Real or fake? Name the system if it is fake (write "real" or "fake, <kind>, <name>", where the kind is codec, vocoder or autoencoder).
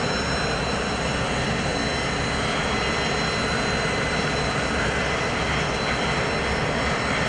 real